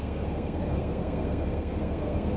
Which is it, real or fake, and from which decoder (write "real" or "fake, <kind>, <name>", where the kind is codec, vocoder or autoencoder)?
fake, codec, SNAC